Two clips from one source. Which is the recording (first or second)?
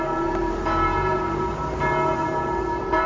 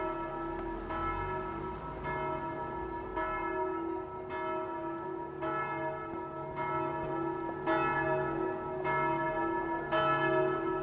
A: second